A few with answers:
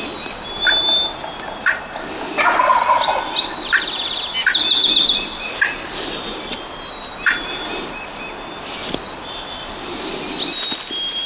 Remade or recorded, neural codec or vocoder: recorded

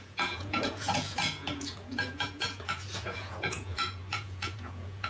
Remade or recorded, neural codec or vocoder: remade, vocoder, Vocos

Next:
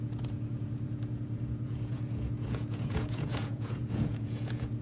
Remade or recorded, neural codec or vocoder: remade, vocoder, Vocos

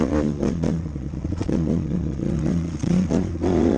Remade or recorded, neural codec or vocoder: remade, vocoder, Vocos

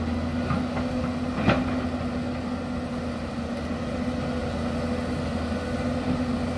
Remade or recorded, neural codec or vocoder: recorded